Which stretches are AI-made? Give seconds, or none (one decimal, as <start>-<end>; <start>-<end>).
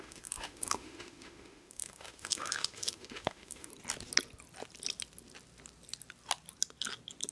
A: 0.0-3.7